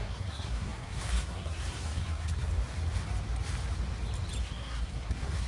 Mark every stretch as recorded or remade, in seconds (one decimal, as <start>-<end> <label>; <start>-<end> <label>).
0.0-2.5 remade; 2.5-4.4 recorded; 4.4-5.5 remade